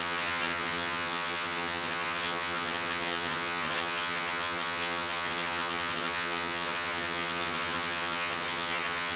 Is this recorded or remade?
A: remade